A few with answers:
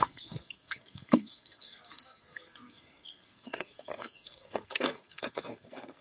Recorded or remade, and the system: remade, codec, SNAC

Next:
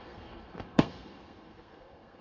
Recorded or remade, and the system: remade, codec, SNAC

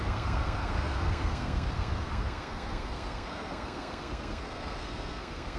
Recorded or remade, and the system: remade, codec, SNAC